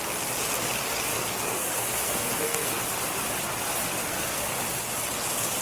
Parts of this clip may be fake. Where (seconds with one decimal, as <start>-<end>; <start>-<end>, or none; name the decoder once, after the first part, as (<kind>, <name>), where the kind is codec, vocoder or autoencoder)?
1.1-2.8 (codec, SNAC); 4.0-4.5